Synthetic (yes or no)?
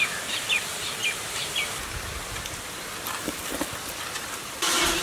no